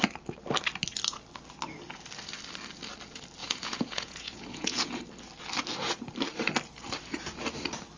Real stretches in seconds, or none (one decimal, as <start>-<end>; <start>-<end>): 0.0-3.4; 5.0-8.0